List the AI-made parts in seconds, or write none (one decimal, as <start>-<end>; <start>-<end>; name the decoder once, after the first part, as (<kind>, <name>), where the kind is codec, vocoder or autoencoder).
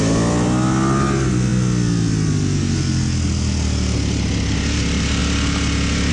none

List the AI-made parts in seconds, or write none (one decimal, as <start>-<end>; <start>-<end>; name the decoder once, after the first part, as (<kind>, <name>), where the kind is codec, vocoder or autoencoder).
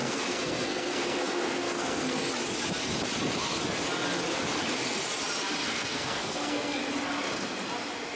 0.0-2.3 (codec, SNAC); 5.6-6.8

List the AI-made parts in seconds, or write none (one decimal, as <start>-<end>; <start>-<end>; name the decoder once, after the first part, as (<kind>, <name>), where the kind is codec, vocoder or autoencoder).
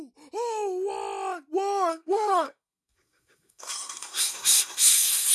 1.9-5.3 (codec, SNAC)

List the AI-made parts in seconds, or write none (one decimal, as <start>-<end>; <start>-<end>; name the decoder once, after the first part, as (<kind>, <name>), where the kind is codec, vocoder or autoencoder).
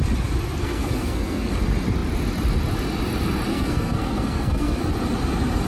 0.6-1.5 (codec, SNAC); 3.5-4.8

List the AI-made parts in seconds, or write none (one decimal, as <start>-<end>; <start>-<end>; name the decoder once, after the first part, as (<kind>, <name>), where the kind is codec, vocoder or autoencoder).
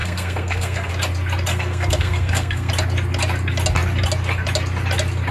0.0-0.9 (codec, SNAC); 1.5-2.7